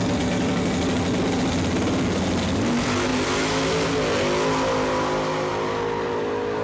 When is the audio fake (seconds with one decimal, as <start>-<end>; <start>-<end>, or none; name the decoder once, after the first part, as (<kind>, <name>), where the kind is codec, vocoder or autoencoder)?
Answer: none